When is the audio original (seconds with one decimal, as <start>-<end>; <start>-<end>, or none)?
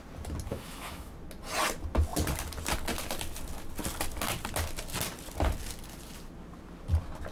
0.0-0.5; 1.1-7.3